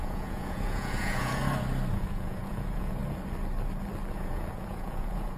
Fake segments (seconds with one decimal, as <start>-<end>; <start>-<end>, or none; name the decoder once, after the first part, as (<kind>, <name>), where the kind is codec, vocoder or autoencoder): 0.0-1.4 (vocoder, Vocos); 1.9-3.0; 4.1-5.4